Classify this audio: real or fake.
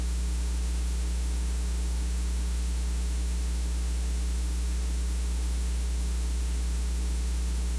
fake